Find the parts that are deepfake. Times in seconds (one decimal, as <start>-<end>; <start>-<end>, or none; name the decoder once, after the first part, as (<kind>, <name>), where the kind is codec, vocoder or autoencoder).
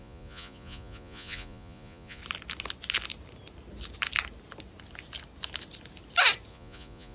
0.0-2.2 (vocoder, Vocos); 6.5-7.1